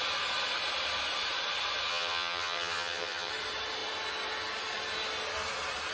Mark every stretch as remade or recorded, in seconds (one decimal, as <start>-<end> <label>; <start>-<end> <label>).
0.0-1.9 recorded; 1.9-3.3 remade; 3.3-5.9 recorded